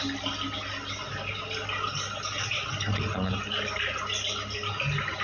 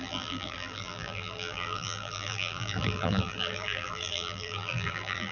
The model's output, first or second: second